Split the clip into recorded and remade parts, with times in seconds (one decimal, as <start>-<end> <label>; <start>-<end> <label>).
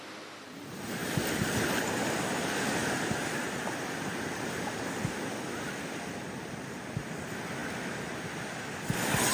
0.0-9.3 recorded